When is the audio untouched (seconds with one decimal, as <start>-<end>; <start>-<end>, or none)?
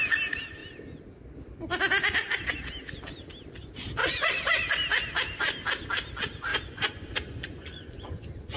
0.0-4.0; 4.6-6.5